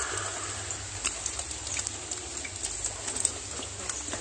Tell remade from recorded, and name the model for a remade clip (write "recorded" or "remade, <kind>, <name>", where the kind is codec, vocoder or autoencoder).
recorded